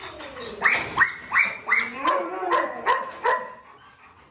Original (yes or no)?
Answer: yes